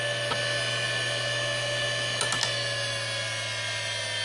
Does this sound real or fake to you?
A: real